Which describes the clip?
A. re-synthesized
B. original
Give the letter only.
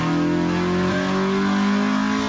B